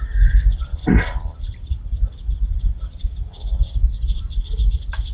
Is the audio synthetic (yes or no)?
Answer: no